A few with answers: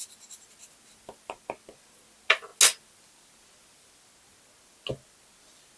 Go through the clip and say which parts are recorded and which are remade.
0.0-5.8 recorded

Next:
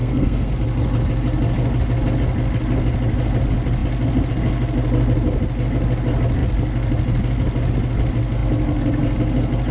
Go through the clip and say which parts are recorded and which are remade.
0.0-0.5 remade; 0.5-9.7 recorded

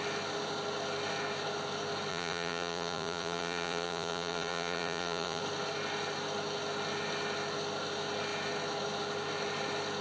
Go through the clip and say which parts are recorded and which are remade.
0.0-2.1 recorded; 2.1-5.4 remade; 5.4-10.0 recorded